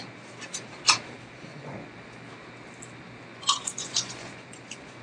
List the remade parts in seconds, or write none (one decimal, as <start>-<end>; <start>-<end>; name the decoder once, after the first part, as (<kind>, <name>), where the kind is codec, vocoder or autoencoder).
1.5-2.3 (vocoder, Vocos); 3.3-5.0